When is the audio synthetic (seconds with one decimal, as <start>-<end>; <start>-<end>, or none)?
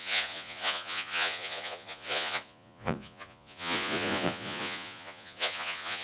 0.0-6.0